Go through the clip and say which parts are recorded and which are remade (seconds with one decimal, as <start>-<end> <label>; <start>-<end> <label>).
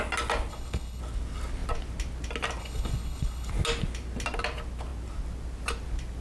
0.0-0.5 recorded; 0.5-1.0 remade; 1.0-2.6 recorded; 2.6-3.5 remade; 3.5-6.2 recorded